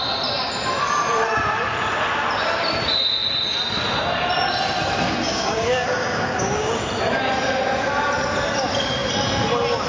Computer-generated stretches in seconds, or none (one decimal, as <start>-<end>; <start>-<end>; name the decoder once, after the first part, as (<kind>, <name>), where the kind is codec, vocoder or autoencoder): 5.3-6.8 (codec, DAC)